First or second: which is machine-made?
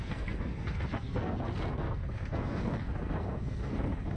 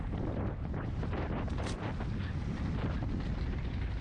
first